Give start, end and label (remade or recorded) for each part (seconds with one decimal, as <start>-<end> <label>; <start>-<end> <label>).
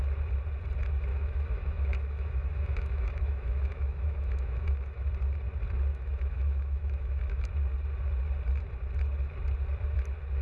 0.0-1.1 recorded; 1.1-5.1 remade; 5.1-5.9 recorded; 5.9-7.5 remade; 7.5-10.4 recorded